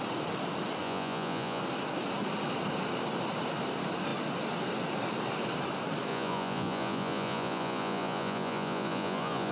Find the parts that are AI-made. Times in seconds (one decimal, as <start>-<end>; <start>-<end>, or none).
0.8-1.6; 6.1-9.5